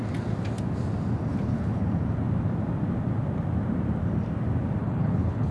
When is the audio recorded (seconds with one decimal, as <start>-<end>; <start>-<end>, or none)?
0.0-1.3; 1.8-4.8

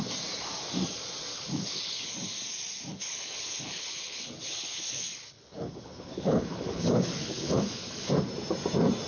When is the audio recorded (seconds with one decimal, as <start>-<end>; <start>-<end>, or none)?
0.0-1.3; 2.1-2.9; 8.1-9.1